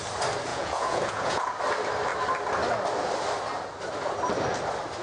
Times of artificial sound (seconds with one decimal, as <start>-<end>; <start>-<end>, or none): 0.5-1.6